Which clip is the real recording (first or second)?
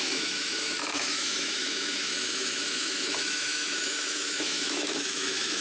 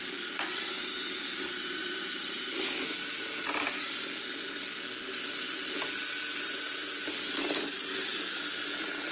second